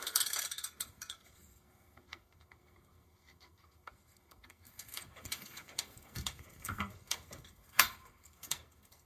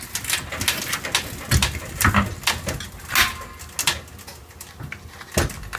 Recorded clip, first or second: second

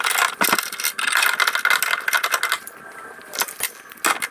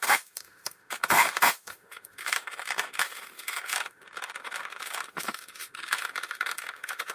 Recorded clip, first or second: first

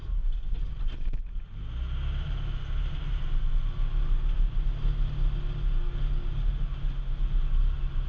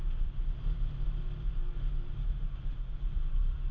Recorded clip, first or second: first